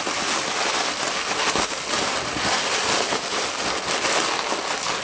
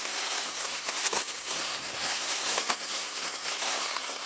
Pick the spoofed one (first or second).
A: second